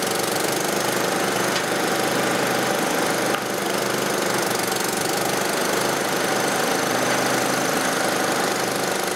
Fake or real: fake